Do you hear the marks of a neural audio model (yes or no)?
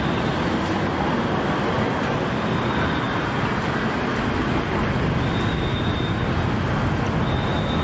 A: no